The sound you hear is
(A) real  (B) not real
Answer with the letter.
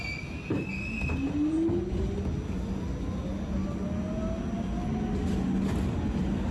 A